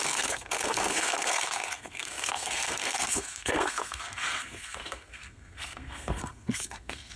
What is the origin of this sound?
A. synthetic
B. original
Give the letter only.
A